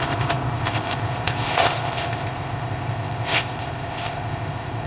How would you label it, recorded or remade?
remade